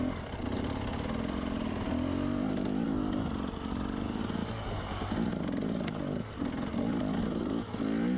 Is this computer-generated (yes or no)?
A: no